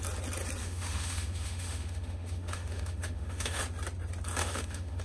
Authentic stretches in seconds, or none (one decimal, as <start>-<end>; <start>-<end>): 0.0-0.6; 3.6-4.4